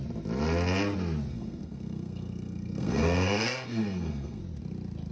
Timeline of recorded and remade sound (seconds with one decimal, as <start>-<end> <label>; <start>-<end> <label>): 0.0-1.3 recorded; 1.3-4.4 remade; 4.4-5.1 recorded